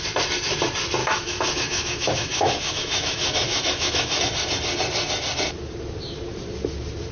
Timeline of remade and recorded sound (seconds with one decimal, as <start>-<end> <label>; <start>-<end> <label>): 0.0-1.0 recorded; 1.0-4.2 remade; 4.2-7.1 recorded